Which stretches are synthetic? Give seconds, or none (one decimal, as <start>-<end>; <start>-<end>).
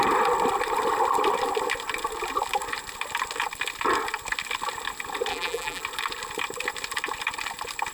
5.3-5.8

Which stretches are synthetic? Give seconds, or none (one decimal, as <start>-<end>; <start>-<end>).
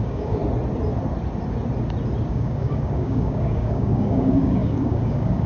0.0-0.4; 2.3-5.5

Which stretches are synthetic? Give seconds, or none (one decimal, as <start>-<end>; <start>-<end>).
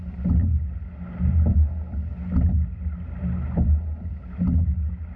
none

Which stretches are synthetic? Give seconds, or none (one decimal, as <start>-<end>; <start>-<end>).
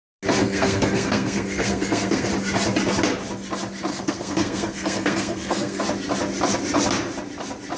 0.4-2.3; 3.9-5.8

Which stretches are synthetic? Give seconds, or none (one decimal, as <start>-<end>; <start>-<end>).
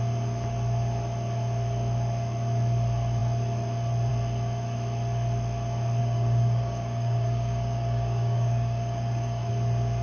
6.0-9.5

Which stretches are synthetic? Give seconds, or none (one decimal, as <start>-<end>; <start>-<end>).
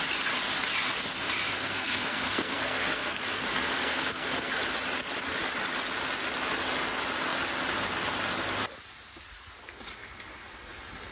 1.5-4.6